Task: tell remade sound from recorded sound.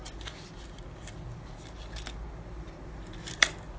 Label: recorded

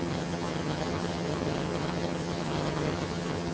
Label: remade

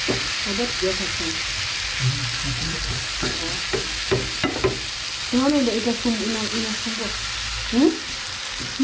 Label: recorded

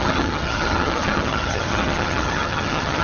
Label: remade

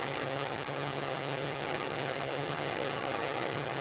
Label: remade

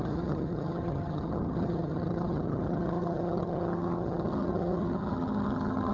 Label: remade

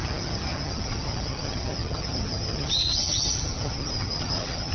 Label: remade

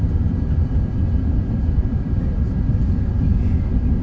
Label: recorded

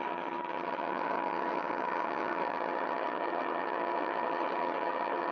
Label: remade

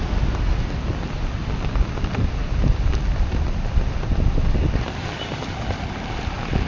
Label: recorded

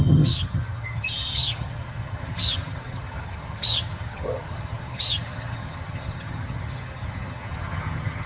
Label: remade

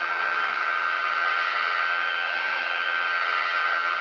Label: remade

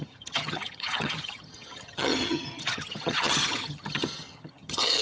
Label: remade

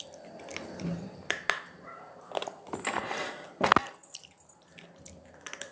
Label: recorded